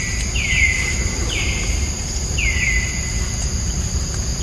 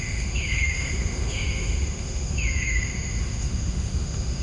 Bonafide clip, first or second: first